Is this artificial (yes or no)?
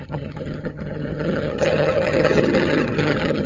yes